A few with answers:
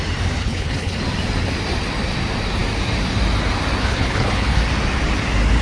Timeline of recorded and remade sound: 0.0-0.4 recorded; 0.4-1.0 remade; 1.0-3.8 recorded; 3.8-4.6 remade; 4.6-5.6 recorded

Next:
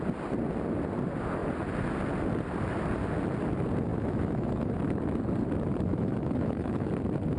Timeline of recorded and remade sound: 0.0-3.9 recorded; 3.9-4.8 remade; 4.8-5.9 recorded; 5.9-6.9 remade; 6.9-7.4 recorded

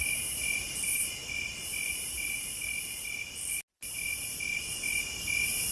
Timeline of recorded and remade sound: 0.0-5.7 recorded

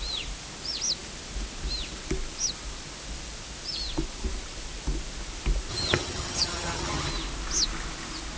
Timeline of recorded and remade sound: 0.0-5.7 recorded; 5.7-7.1 remade; 7.1-8.4 recorded